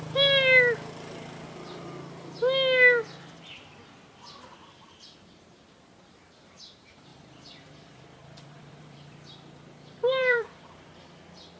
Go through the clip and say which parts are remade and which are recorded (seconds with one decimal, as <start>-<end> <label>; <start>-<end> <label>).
0.0-7.1 recorded; 7.1-11.0 remade; 11.0-11.6 recorded